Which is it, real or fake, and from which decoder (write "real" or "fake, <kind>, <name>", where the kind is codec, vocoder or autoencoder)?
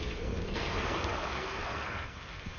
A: fake, codec, SNAC